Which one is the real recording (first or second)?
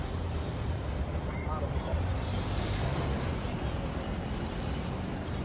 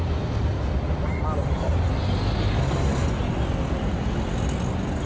second